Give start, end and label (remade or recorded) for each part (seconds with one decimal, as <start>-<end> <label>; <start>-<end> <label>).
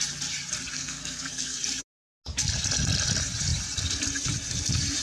0.0-0.7 recorded; 0.7-1.6 remade; 1.6-5.0 recorded